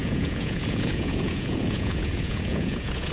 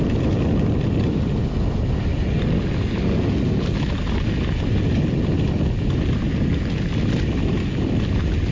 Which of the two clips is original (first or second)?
second